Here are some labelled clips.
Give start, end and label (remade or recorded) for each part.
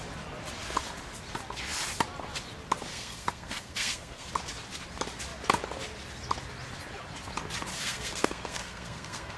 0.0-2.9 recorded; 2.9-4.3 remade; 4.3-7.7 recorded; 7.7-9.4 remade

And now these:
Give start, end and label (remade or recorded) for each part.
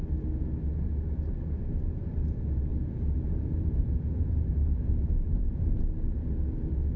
0.0-2.7 recorded; 2.7-5.8 remade; 5.8-7.0 recorded